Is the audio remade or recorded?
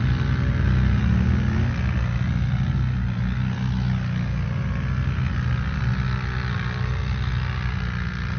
recorded